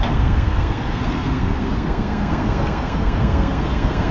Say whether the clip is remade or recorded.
remade